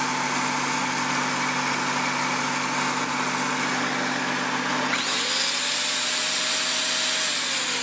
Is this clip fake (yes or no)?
no